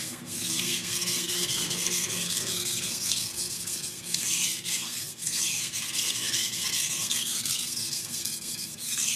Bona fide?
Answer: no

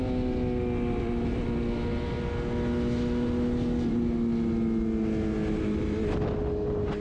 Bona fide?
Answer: yes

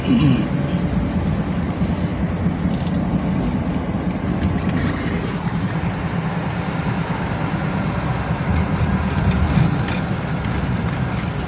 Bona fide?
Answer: yes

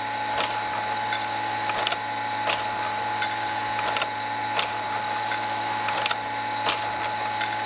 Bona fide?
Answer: yes